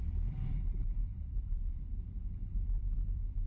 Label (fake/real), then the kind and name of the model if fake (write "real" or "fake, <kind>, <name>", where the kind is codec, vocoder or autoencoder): fake, vocoder, BigVGAN v2